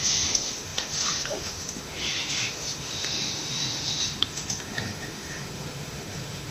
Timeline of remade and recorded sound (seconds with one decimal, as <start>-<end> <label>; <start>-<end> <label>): 0.0-6.5 remade